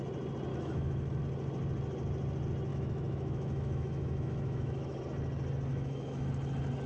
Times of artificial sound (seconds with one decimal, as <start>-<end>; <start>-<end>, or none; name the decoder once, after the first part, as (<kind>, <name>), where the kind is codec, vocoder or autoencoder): 0.5-1.2 (autoencoder, DAC-VAE); 2.7-5.0; 5.7-6.3